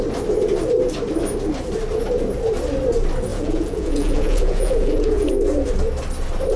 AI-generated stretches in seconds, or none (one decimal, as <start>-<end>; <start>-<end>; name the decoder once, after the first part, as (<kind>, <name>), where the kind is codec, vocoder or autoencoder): 3.3-5.3 (vocoder, Vocos)